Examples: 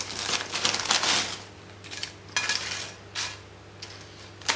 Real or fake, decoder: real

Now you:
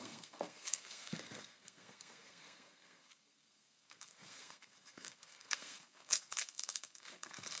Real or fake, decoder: fake, codec, SNAC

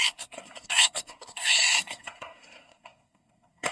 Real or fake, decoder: fake, codec, SNAC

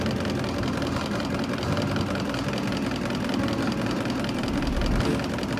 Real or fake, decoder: real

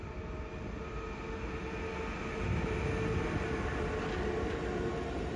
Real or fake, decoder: real